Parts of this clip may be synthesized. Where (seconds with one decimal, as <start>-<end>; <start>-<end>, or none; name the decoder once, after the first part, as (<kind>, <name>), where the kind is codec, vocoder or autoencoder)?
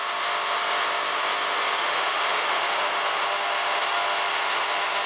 1.8-2.8 (autoencoder, DAC-VAE)